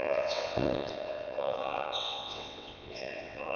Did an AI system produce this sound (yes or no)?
yes